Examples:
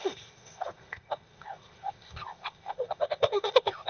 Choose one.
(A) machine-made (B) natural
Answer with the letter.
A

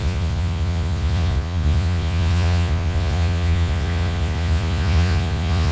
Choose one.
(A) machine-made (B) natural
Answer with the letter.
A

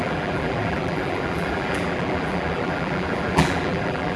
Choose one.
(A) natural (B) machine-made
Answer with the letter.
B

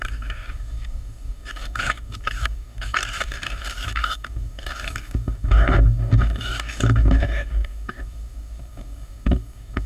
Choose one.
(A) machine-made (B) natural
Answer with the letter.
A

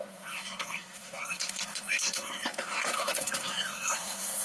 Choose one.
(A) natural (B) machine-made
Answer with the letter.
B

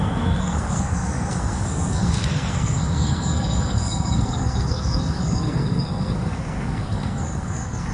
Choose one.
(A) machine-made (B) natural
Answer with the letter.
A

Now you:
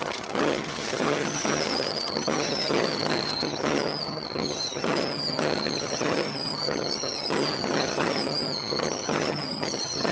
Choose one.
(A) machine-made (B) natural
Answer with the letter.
A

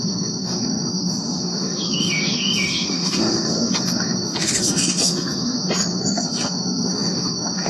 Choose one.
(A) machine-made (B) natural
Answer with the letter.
A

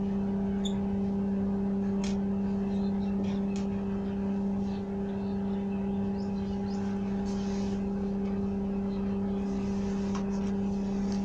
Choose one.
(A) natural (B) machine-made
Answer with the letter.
A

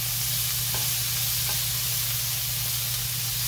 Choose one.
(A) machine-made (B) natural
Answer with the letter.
B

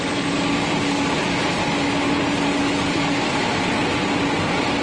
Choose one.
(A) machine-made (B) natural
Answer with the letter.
B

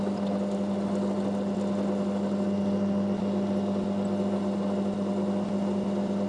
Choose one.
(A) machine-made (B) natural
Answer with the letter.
B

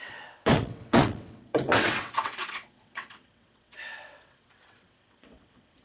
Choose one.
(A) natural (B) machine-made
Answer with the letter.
B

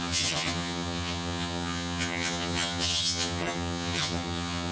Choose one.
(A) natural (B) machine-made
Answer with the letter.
B